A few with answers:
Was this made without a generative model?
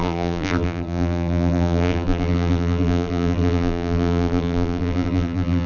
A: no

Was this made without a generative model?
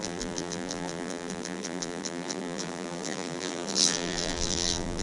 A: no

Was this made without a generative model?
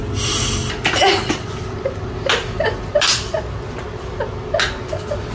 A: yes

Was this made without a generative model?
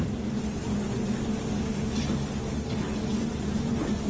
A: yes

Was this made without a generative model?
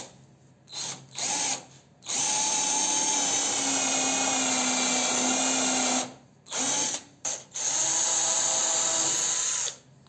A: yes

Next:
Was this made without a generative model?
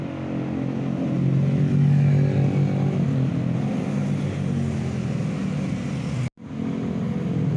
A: yes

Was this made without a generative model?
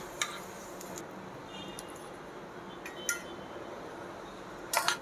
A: yes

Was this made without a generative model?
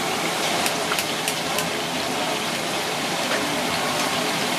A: no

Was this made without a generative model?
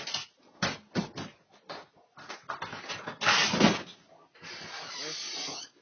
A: yes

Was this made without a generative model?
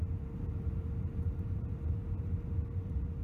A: no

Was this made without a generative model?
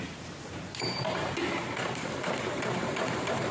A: no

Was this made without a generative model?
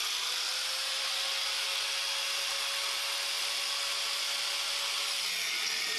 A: yes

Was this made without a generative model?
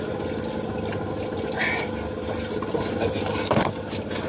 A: yes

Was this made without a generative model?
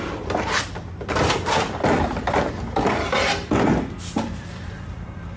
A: no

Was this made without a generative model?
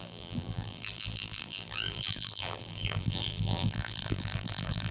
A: no